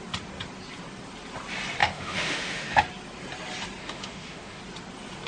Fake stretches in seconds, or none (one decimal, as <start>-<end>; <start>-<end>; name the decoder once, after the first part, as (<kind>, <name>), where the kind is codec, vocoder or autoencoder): 1.8-2.8 (autoencoder, DAC-VAE); 3.8-4.6